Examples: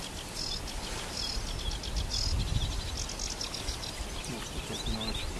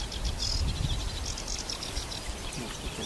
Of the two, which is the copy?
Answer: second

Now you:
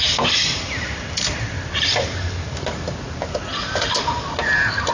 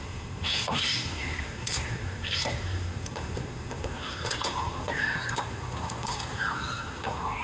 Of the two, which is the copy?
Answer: second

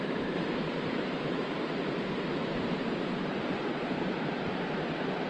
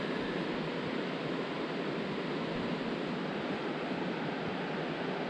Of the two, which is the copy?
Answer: first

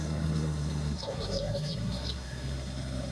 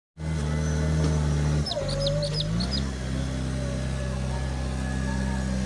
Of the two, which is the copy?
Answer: first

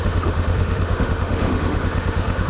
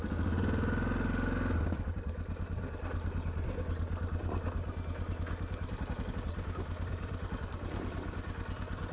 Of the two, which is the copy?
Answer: first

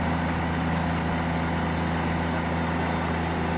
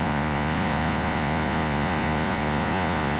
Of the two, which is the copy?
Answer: second